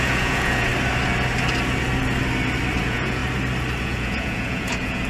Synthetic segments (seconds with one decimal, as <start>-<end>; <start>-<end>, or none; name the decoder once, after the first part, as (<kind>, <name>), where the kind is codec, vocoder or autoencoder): 0.0-0.7 (vocoder, Vocos); 2.8-3.2; 3.8-5.1